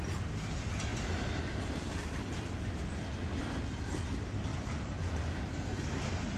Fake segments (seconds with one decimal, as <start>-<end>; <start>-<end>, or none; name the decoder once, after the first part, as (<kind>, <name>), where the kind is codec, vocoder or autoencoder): 4.5-5.6 (vocoder, BigVGAN v2)